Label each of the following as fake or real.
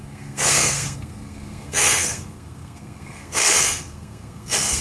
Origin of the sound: fake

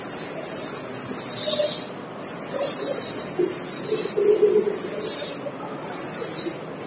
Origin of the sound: real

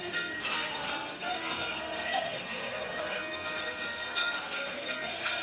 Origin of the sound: fake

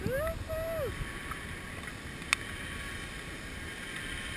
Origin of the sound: real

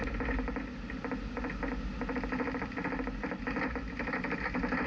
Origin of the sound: real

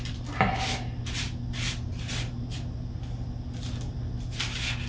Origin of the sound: real